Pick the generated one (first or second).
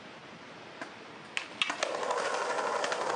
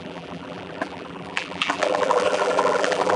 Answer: second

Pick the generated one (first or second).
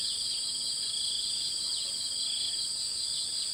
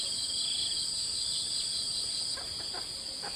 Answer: second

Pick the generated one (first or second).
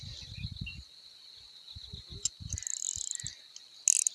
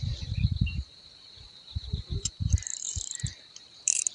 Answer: second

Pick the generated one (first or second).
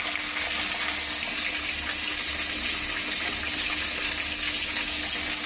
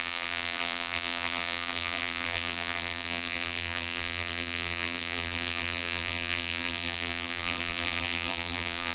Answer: second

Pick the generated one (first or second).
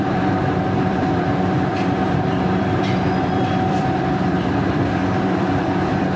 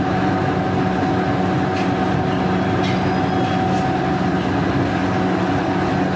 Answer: first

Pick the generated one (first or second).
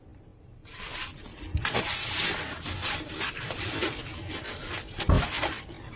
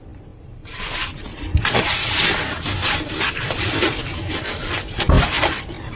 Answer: second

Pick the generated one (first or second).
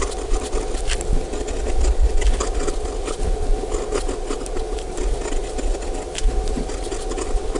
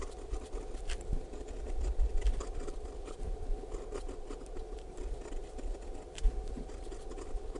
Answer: second